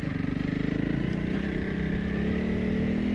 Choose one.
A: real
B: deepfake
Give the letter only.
A